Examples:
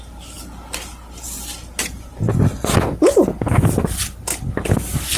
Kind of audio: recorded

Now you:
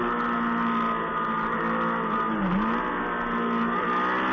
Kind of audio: recorded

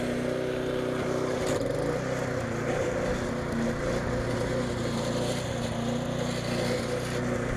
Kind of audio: recorded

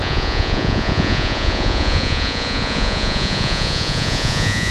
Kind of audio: remade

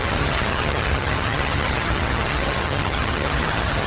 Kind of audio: remade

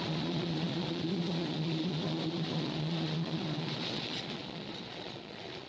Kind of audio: remade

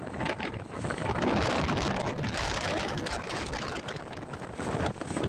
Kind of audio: remade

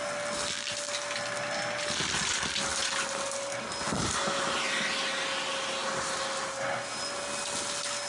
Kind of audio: recorded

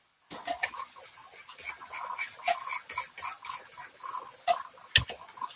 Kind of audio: recorded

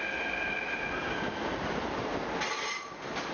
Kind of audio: recorded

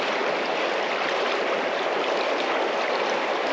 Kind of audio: recorded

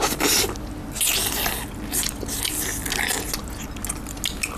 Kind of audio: recorded